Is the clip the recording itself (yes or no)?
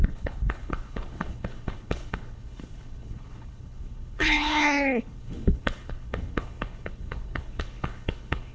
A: no